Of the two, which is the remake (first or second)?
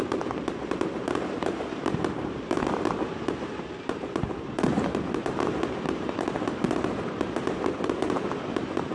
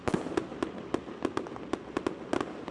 first